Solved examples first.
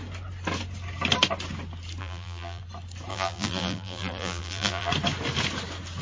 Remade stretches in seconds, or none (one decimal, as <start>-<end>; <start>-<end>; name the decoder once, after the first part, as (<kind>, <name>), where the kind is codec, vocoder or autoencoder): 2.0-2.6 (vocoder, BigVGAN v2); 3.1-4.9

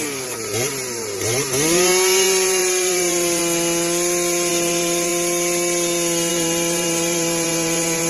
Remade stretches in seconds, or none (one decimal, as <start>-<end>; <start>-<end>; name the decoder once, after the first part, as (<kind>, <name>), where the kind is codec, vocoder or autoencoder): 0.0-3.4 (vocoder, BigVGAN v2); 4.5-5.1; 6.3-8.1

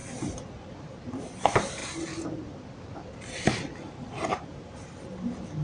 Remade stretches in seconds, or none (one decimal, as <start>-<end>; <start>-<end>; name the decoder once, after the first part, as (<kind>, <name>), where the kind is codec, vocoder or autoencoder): 0.7-1.8 (vocoder, BigVGAN v2); 4.3-5.6